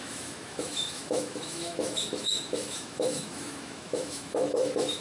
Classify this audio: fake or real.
fake